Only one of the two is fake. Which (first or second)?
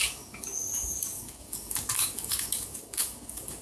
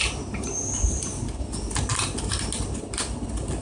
first